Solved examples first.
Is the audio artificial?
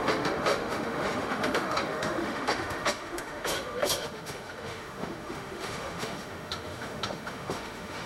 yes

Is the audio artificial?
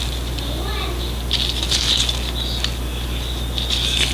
no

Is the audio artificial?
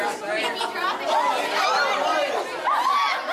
no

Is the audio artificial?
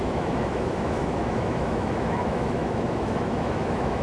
yes